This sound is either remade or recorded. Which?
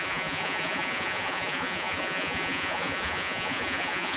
remade